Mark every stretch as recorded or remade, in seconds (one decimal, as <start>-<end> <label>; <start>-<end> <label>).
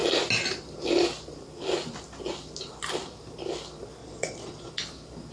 0.0-4.0 recorded; 4.0-4.7 remade; 4.7-5.3 recorded